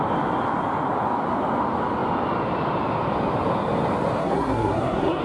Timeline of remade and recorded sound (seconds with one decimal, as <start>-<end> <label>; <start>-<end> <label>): 0.0-4.2 recorded; 4.2-5.2 remade

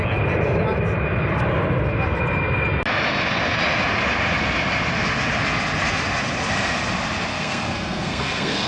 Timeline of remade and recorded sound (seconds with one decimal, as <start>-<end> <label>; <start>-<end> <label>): 0.0-7.3 recorded; 7.3-8.7 remade

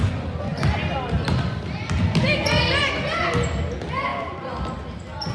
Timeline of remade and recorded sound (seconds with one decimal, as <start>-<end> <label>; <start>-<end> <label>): 0.0-5.3 recorded

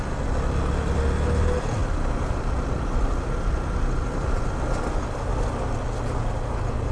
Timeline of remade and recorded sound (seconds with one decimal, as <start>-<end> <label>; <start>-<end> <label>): 0.0-6.9 recorded

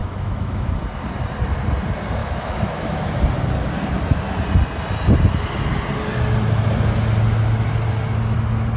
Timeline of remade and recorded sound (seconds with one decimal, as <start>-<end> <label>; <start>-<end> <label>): 0.0-0.7 remade; 0.7-2.2 recorded; 2.2-3.1 remade; 3.1-8.8 recorded

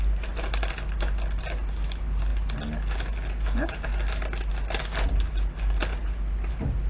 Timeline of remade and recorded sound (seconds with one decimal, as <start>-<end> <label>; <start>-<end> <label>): 0.0-6.9 recorded